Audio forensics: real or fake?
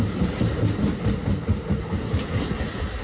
real